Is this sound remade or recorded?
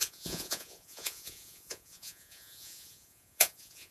remade